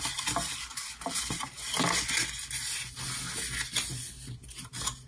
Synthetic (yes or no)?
no